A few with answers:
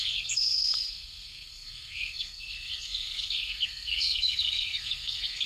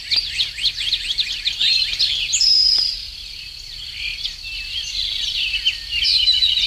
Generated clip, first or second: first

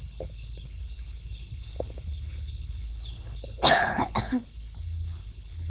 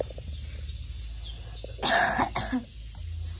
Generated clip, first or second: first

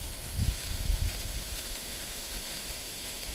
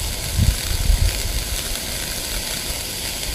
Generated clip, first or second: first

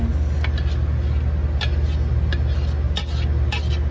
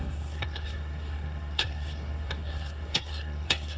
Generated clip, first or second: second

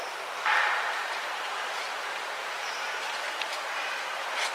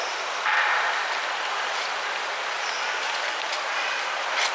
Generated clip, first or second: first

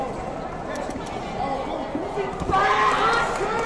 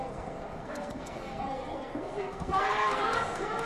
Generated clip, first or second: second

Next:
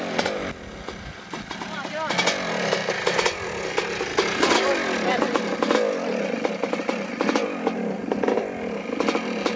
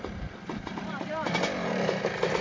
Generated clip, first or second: second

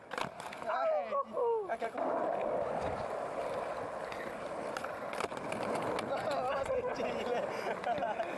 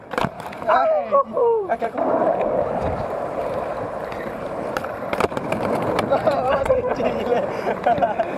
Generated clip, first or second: second